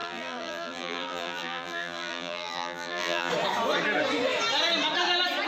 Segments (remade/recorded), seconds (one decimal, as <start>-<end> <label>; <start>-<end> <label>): 0.0-3.3 remade; 3.3-5.5 recorded

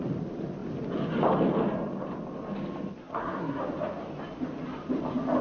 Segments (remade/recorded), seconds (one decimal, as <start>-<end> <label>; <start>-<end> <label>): 0.0-3.0 recorded; 3.0-3.6 remade; 3.6-5.4 recorded

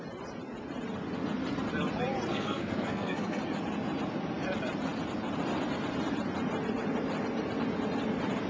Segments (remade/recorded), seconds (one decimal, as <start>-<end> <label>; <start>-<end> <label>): 0.0-2.3 recorded; 2.3-3.4 remade; 3.4-8.5 recorded

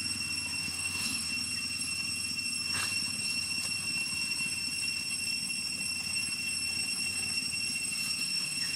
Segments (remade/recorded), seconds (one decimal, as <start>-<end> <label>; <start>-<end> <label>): 0.0-0.6 recorded; 0.6-1.3 remade; 1.3-8.2 recorded; 8.2-8.8 remade

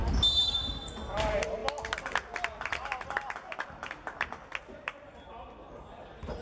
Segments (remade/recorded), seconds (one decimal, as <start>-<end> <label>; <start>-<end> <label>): 0.0-1.0 recorded; 1.0-1.6 remade; 1.6-4.6 recorded; 4.6-6.4 remade